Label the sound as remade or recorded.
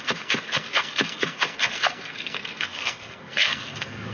remade